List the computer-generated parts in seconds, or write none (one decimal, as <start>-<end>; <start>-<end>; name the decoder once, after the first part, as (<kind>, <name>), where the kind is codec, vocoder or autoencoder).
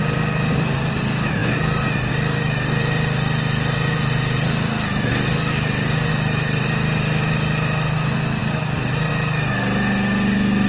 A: none